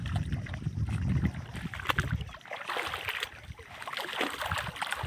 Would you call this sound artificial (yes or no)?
no